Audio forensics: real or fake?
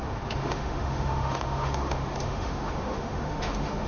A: fake